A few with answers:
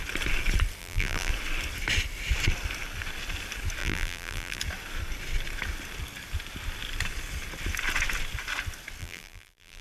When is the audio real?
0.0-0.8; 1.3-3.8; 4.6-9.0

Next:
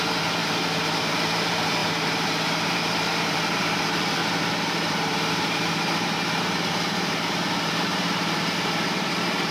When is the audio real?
none